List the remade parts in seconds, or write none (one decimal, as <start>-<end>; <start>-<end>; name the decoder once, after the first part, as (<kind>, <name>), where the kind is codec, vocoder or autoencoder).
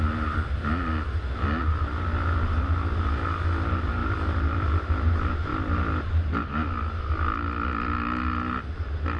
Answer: 4.0-4.8 (vocoder, BigVGAN v2)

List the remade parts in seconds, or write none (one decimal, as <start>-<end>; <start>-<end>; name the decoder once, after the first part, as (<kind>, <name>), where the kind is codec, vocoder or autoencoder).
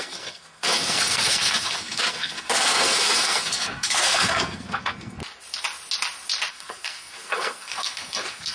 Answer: 0.0-5.2 (codec, SNAC); 6.5-8.5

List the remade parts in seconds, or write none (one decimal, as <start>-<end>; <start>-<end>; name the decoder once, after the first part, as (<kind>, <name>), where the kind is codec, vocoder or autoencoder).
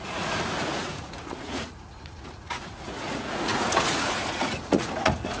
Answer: 0.0-5.4 (vocoder, Vocos)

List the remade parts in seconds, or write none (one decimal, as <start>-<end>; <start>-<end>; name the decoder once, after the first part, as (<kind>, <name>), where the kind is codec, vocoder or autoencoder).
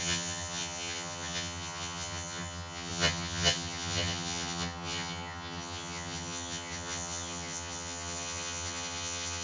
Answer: 0.0-9.4 (vocoder, HiFi-GAN)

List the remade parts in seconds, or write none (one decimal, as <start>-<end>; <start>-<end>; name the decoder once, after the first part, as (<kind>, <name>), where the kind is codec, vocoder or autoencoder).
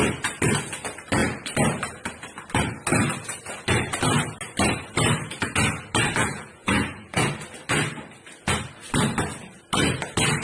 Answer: 6.2-7.3 (vocoder, Vocos)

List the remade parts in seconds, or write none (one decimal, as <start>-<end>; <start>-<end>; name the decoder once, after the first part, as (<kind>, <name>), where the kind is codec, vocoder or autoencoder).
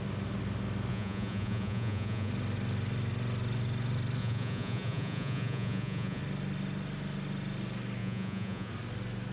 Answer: 0.9-2.3 (vocoder, Vocos); 4.2-6.2; 8.0-8.7